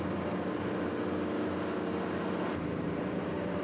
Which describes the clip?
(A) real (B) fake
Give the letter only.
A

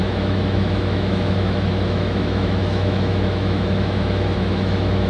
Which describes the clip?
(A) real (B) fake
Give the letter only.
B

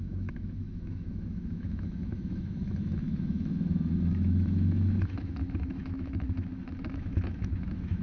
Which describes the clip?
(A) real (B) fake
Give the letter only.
B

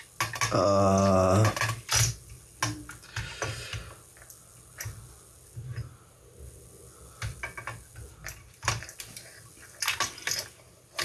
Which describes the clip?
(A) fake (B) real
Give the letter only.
B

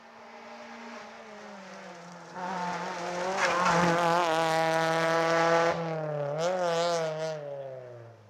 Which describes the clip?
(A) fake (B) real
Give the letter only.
B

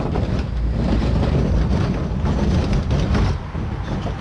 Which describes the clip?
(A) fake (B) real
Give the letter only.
B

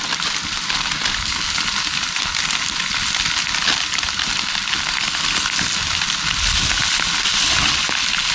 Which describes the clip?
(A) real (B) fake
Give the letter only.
A